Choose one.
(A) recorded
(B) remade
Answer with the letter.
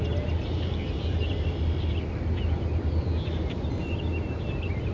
A